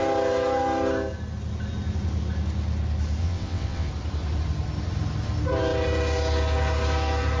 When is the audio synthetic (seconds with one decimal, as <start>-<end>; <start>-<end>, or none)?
3.2-3.9

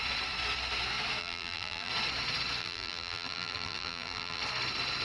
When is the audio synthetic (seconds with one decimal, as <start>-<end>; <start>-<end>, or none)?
1.2-1.9; 2.6-4.4

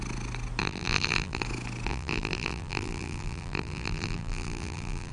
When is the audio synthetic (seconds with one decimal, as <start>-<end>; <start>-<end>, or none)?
0.6-1.4; 1.9-5.1